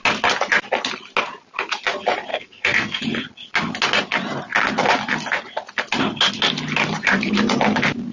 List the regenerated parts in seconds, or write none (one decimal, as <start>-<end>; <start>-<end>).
2.3-3.0